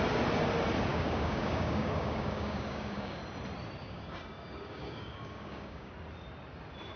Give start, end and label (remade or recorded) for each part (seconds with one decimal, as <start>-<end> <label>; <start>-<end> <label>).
0.0-0.9 recorded; 0.9-3.2 remade; 3.2-3.8 recorded; 3.8-5.9 remade; 5.9-7.0 recorded